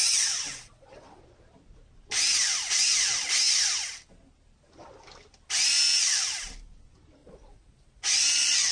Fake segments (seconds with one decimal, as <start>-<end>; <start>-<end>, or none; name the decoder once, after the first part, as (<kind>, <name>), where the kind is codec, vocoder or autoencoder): 0.0-1.2 (vocoder, Vocos); 7.2-8.7